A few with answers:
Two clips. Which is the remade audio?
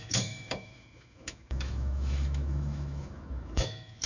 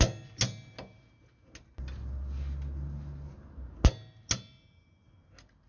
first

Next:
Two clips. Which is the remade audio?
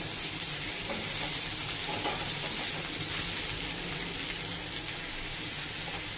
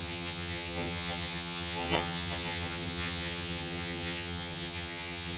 second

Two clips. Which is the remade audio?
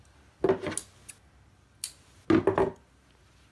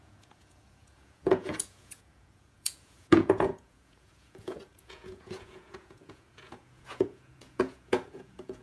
second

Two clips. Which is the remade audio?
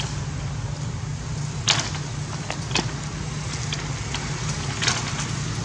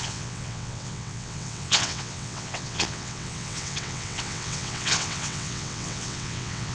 second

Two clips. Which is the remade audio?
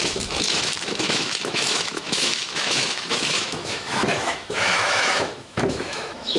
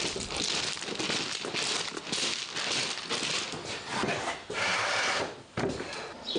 first